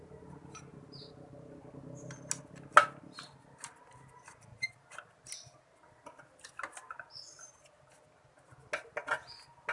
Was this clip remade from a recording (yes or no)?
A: no